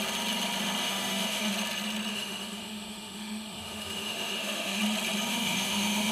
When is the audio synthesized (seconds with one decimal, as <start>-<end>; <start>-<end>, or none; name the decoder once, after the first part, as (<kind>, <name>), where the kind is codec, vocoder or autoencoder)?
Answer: 0.8-1.5 (autoencoder, DAC-VAE); 2.1-4.8; 5.3-6.1